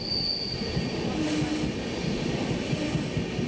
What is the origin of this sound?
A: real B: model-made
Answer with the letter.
A